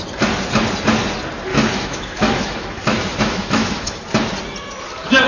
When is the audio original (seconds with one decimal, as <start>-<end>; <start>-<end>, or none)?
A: 0.0-1.5; 4.0-5.3